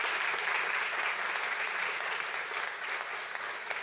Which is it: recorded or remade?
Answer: recorded